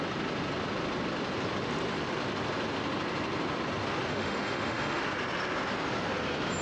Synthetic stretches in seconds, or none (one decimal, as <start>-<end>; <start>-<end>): 4.1-5.0